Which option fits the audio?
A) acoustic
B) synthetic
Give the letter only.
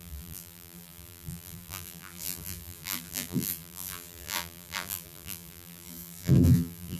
B